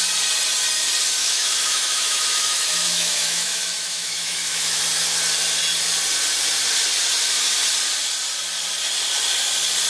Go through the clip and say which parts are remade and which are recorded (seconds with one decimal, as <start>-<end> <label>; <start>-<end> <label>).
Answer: 0.0-1.2 recorded; 1.2-4.8 remade; 4.8-9.9 recorded